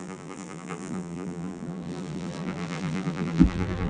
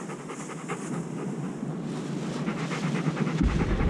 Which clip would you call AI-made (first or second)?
first